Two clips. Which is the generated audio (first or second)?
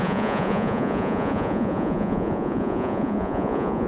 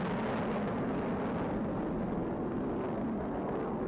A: first